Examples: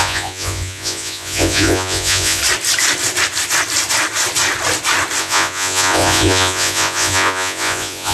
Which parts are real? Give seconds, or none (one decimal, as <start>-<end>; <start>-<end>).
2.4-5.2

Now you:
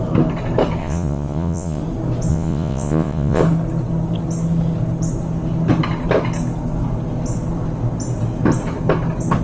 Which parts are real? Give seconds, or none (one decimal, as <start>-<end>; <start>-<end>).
0.0-0.8; 1.8-2.3; 3.4-9.4

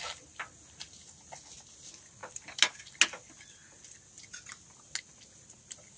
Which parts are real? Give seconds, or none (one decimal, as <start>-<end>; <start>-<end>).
0.0-6.0

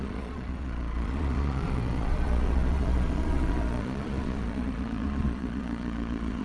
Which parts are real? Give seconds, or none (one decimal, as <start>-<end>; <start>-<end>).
none

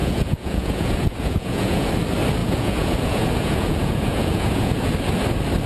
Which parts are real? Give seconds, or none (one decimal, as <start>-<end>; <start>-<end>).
1.9-2.4; 4.9-5.7